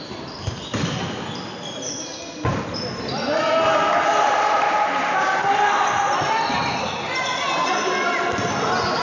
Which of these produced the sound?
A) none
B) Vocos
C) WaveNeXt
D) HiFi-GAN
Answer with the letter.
A